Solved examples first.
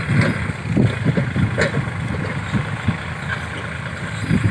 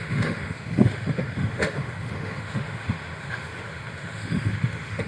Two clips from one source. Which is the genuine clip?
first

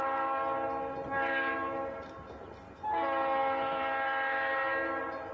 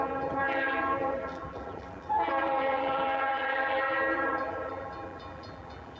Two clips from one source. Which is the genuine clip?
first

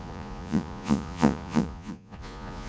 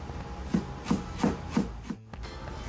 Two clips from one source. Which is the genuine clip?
second